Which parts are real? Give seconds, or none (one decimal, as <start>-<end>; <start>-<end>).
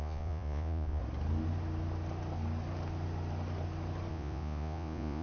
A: 1.0-4.1